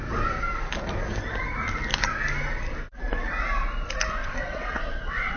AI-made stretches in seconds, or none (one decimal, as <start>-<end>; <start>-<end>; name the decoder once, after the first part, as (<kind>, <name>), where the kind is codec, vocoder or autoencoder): 4.2-5.4 (vocoder, WaveNeXt)